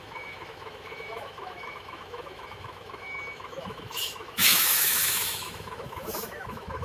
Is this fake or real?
fake